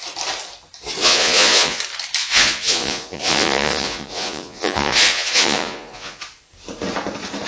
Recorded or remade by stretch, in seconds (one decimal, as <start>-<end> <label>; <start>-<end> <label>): 0.0-1.0 recorded; 1.0-1.8 remade; 1.8-2.2 recorded; 2.2-6.2 remade; 6.2-7.5 recorded